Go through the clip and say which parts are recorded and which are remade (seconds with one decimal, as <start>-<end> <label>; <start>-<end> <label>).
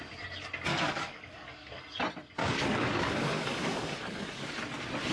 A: 0.0-0.7 recorded; 0.7-1.8 remade; 1.8-2.4 recorded; 2.4-4.5 remade; 4.5-5.1 recorded